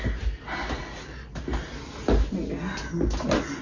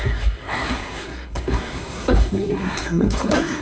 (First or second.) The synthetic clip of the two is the second